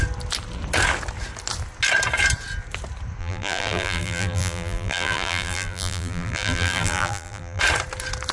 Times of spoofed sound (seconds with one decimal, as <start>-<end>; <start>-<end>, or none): 3.2-7.6